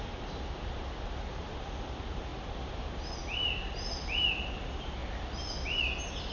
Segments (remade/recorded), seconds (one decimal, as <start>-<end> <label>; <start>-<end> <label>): 0.0-6.3 recorded